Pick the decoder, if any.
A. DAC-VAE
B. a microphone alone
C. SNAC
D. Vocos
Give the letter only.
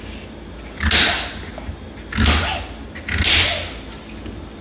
B